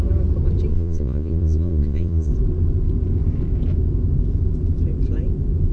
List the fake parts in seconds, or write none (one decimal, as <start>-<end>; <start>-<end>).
0.7-2.3